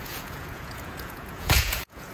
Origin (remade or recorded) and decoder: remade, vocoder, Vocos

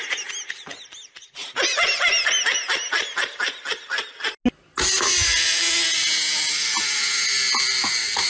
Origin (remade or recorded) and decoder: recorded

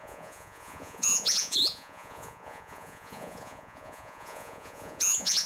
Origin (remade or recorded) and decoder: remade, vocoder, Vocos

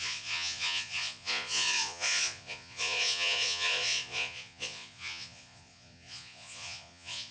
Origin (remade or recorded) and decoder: remade, vocoder, Vocos